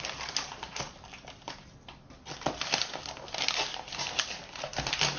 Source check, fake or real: real